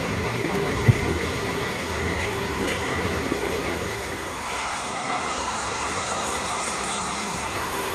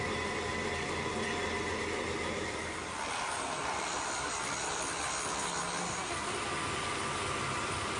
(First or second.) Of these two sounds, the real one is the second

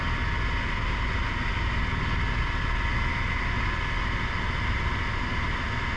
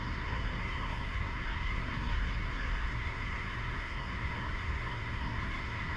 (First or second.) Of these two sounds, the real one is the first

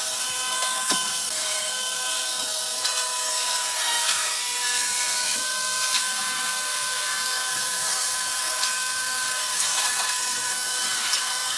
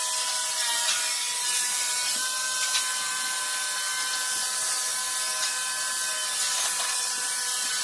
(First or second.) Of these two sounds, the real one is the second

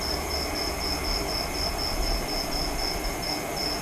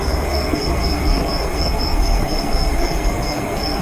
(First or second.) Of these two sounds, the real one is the first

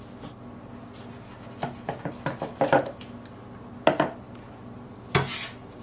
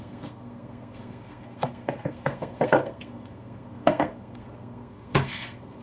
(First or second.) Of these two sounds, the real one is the first